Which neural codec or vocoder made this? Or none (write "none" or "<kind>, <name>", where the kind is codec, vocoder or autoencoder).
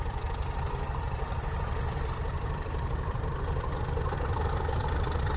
none